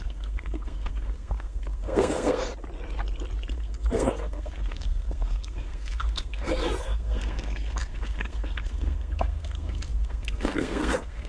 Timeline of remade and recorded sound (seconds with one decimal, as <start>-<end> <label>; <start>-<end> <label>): 0.0-2.5 remade; 2.5-3.5 recorded; 3.5-11.3 remade